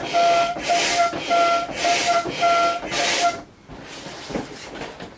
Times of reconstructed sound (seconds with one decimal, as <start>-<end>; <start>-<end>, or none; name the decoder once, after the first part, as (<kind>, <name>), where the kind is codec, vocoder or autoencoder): none